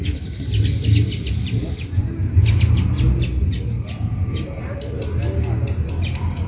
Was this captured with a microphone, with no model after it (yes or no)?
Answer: yes